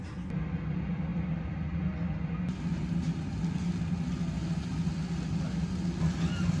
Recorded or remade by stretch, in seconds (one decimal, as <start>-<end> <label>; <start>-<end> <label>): 0.0-6.6 recorded